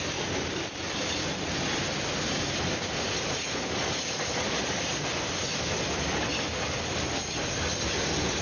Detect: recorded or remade recorded